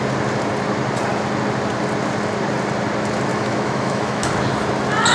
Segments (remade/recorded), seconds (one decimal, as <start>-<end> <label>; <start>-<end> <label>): 0.0-3.3 recorded; 3.3-4.3 remade; 4.3-5.1 recorded